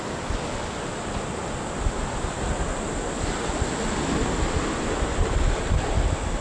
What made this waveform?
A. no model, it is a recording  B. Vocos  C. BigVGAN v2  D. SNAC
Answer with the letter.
A